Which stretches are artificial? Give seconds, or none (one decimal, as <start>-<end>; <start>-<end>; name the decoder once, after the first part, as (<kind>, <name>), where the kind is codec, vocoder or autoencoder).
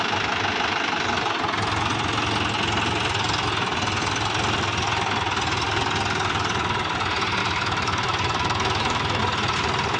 7.4-9.2 (autoencoder, DAC-VAE)